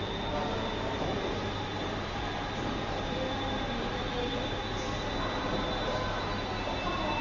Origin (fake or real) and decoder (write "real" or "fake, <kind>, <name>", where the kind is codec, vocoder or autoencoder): real